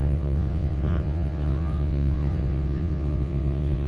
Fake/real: fake